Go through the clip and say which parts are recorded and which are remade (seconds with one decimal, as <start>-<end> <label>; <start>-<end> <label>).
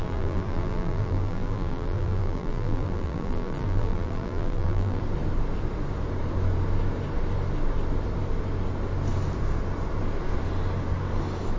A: 0.0-5.0 remade; 5.0-11.6 recorded